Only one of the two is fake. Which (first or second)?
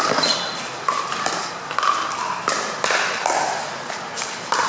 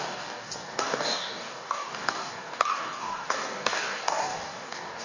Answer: second